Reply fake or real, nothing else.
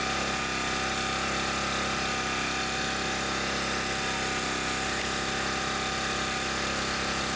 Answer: real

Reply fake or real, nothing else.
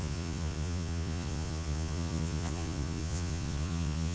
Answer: fake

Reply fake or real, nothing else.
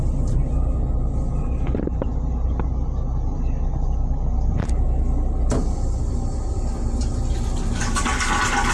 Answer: real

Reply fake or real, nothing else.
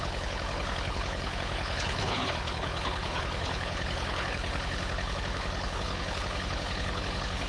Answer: fake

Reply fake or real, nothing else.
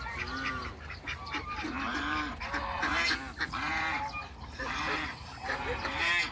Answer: fake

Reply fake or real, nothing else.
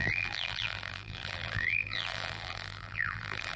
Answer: fake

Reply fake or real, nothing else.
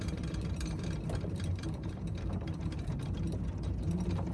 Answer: fake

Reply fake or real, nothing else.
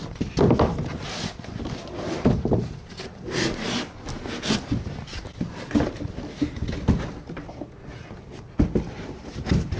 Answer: real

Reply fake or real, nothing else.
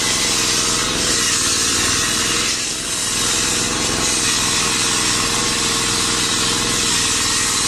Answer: real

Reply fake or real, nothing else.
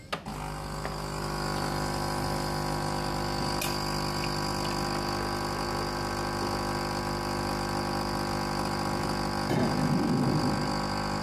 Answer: real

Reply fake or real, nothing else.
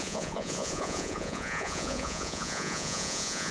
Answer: fake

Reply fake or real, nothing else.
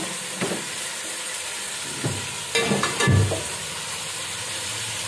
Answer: real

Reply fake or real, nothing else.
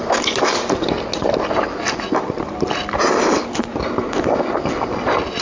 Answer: real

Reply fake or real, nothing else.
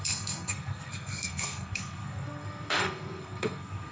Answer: fake